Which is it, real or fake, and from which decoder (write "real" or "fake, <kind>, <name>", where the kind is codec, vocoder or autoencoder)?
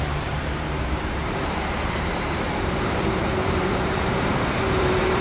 fake, vocoder, BigVGAN v2